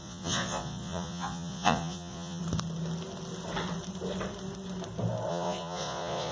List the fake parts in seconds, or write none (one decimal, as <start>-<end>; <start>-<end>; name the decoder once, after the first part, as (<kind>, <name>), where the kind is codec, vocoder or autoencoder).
0.0-2.4 (vocoder, Vocos); 5.3-6.3